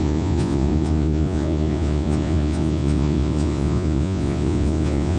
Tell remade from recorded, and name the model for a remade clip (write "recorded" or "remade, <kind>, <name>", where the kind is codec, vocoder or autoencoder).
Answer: remade, vocoder, Vocos